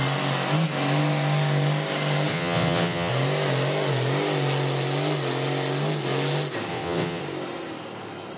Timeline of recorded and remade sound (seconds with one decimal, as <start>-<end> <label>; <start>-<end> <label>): 0.0-2.3 recorded; 2.3-3.1 remade; 3.1-6.7 recorded; 6.7-7.2 remade; 7.2-8.4 recorded